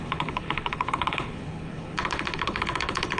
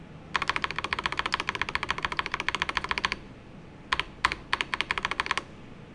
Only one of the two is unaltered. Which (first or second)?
second